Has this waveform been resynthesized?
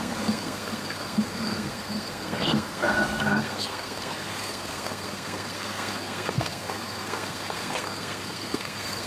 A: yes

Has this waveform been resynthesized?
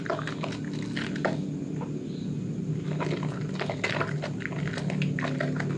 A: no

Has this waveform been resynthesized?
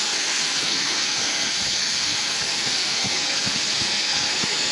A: yes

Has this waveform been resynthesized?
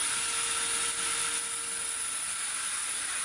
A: no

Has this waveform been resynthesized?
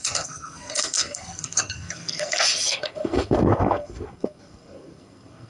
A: yes